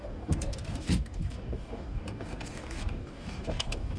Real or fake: fake